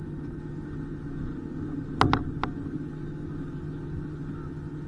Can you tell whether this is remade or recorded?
recorded